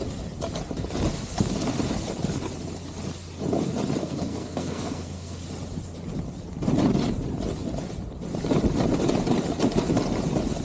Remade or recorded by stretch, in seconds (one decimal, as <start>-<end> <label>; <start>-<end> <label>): 0.0-4.0 recorded; 4.0-5.4 remade; 5.4-10.6 recorded